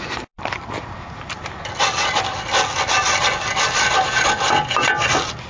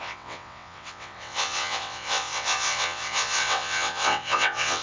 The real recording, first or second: first